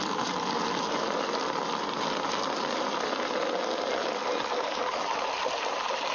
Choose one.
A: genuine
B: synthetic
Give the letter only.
A